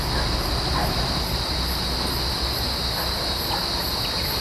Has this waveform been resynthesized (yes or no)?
no